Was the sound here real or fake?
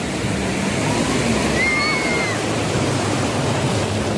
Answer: real